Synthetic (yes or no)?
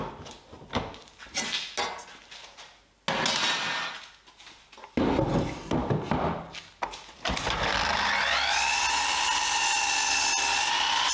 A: no